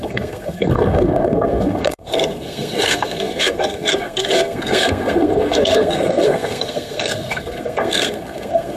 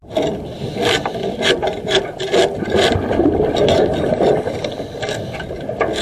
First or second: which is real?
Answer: second